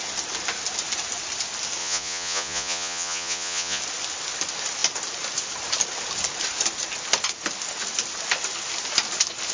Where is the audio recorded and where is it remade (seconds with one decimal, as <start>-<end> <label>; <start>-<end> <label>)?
0.0-1.8 recorded; 1.8-3.8 remade; 3.8-9.5 recorded